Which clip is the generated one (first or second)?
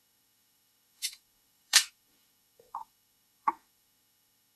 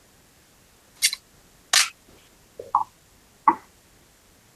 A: first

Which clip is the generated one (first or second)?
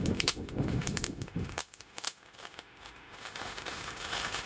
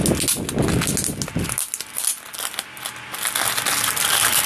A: first